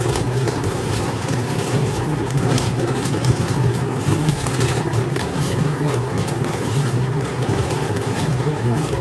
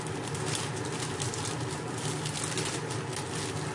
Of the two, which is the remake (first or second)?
first